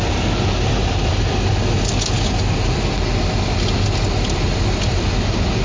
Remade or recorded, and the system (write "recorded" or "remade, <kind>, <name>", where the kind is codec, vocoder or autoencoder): recorded